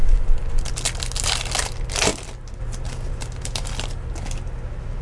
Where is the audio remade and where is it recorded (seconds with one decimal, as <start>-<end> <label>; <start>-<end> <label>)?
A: 0.0-5.0 recorded

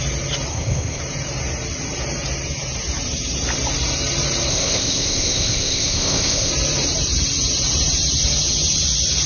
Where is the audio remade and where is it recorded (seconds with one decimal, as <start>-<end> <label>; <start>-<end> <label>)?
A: 0.0-0.5 recorded; 0.5-1.0 remade; 1.0-4.5 recorded; 4.5-6.5 remade; 6.5-9.3 recorded

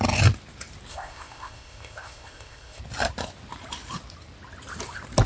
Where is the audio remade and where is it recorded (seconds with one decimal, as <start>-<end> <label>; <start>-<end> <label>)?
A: 0.0-0.9 recorded; 0.9-2.8 remade; 2.8-5.3 recorded

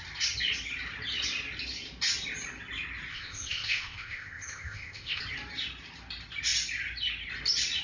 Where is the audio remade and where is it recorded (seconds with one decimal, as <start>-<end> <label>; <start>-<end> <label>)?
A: 0.0-3.1 recorded; 3.1-5.2 remade; 5.2-7.8 recorded

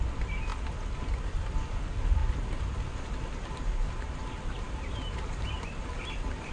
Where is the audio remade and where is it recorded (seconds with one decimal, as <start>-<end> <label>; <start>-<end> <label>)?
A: 0.0-2.2 recorded; 2.2-5.9 remade; 5.9-6.5 recorded

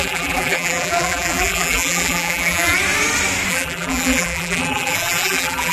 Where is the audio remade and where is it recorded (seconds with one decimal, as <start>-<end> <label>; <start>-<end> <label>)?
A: 0.0-2.8 remade; 2.8-3.5 recorded; 3.5-5.7 remade

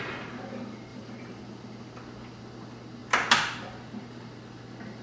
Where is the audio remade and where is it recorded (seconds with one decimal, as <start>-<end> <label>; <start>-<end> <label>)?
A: 0.0-0.9 recorded; 0.9-1.4 remade; 1.4-5.0 recorded